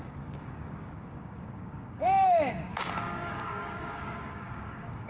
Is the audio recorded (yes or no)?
no